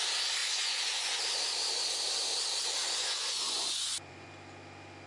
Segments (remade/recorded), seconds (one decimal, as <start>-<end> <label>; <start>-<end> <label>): 0.0-0.4 recorded; 0.4-1.2 remade; 1.2-2.8 recorded; 2.8-4.3 remade; 4.3-5.1 recorded